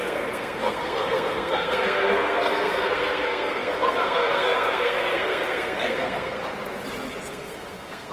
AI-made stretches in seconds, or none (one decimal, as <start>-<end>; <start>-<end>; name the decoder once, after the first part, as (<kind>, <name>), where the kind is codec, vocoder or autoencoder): 0.0-6.4 (codec, SNAC); 7.3-8.1